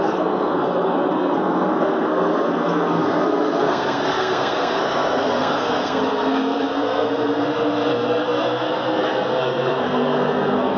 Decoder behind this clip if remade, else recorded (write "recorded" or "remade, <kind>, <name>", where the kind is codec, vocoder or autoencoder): remade, codec, SNAC